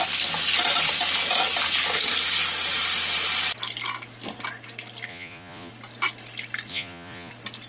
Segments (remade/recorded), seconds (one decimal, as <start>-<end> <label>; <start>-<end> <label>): 0.0-5.1 recorded; 5.1-5.7 remade; 5.7-6.7 recorded; 6.7-7.3 remade; 7.3-7.7 recorded